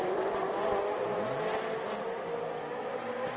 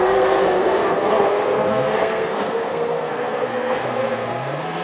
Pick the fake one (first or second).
second